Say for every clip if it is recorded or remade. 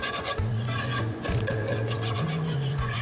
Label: remade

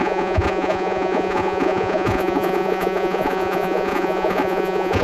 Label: remade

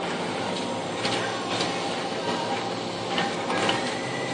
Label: recorded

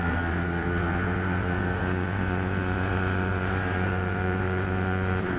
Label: remade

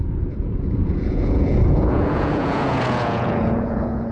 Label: remade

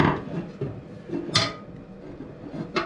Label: recorded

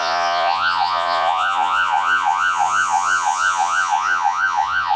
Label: remade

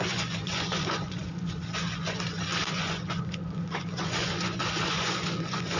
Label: remade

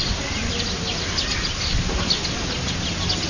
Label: recorded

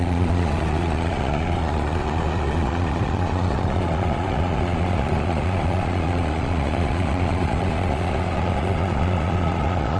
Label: remade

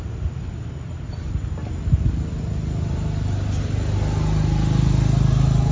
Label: recorded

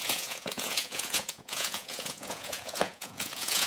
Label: remade